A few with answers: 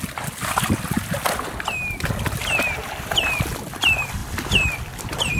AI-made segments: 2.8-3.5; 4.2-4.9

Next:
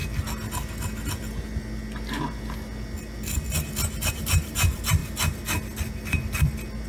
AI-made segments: 4.1-5.0

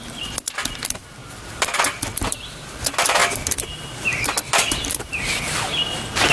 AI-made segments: 0.0-6.3

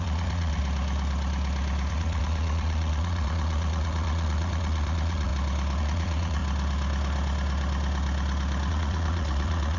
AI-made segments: 0.0-0.6; 1.9-5.3; 5.8-6.4; 8.7-9.8